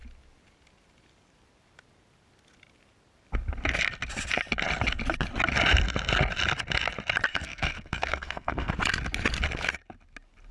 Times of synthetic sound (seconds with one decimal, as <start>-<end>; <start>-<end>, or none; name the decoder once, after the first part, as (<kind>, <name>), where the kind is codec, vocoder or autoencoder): 7.3-8.7 (codec, SNAC)